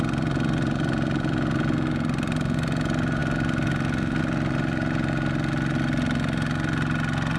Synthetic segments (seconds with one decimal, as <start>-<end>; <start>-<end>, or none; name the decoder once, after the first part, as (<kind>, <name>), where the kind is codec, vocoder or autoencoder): none